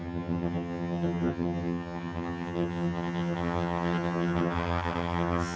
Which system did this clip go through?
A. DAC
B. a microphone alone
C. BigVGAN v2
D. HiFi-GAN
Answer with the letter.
D